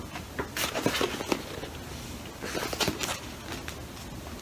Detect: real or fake real